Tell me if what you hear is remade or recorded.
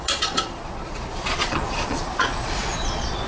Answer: remade